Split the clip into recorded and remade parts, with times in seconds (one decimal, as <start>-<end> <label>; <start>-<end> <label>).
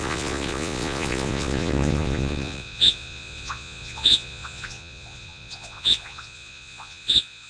0.0-7.5 remade